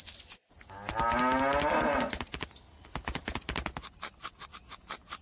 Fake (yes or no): no